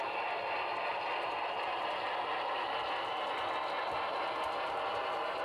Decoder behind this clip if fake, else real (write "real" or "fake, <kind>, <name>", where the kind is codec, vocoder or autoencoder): real